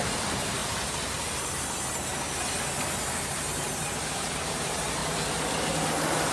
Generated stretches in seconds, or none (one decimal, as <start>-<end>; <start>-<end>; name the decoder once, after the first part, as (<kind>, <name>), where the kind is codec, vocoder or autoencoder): 0.0-0.6 (vocoder, BigVGAN v2); 3.2-5.0

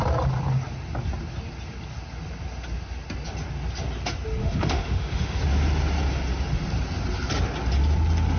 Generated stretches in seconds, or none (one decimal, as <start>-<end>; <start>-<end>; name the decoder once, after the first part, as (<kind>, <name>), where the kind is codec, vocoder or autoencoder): 4.4-5.4 (autoencoder, DAC-VAE)

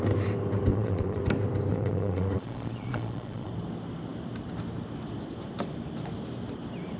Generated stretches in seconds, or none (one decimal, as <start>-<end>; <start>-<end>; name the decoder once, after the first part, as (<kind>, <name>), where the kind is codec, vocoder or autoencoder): 0.7-1.2 (vocoder, Vocos); 1.7-3.5

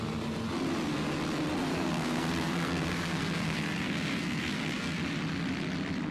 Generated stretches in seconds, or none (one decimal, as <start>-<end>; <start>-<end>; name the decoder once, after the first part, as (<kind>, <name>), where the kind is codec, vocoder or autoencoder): 1.7-5.0 (codec, SNAC)

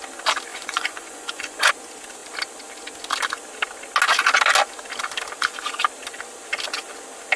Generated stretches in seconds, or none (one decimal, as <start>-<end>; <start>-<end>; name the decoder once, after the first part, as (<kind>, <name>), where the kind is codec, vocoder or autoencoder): 0.5-1.7 (vocoder, Vocos)

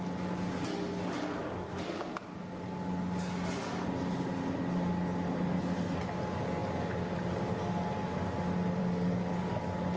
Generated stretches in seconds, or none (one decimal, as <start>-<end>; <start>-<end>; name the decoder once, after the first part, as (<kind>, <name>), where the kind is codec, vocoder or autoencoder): 1.4-2.1 (codec, DAC); 8.8-9.6

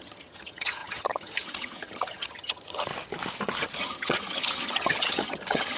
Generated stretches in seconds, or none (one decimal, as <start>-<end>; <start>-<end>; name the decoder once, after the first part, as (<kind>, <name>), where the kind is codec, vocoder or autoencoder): 0.0-2.9 (vocoder, HiFi-GAN); 3.8-5.8

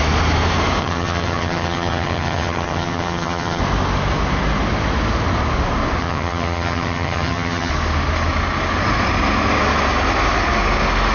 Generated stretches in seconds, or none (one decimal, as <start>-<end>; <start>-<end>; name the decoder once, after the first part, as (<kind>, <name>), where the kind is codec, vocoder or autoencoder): 0.8-3.6 (vocoder, HiFi-GAN); 6.0-7.7